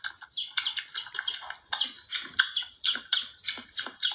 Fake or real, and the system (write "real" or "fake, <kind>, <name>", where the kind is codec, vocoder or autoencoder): real